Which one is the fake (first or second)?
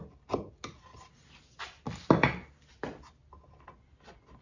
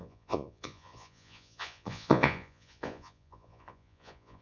second